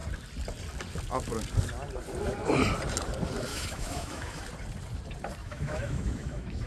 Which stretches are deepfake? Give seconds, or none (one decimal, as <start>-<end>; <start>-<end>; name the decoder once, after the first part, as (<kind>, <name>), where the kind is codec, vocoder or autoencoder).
3.5-4.4 (autoencoder, DAC-VAE); 5.4-6.7